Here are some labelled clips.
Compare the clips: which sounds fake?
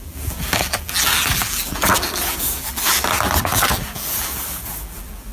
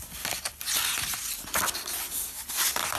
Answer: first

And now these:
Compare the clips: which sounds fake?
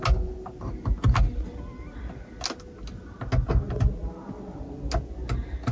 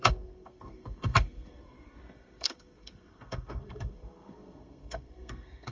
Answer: second